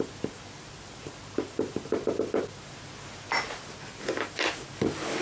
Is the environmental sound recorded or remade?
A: recorded